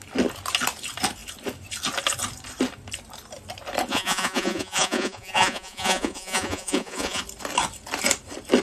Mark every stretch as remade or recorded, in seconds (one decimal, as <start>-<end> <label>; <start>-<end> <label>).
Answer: 0.0-3.9 recorded; 3.9-7.2 remade; 7.2-8.6 recorded